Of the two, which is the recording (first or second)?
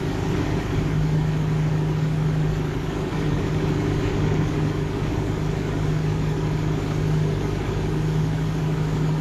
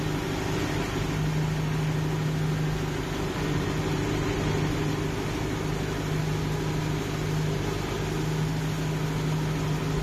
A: second